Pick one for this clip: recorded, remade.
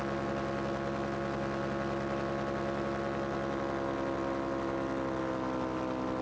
recorded